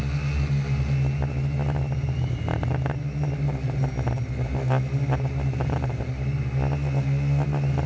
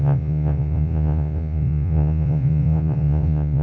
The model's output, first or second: second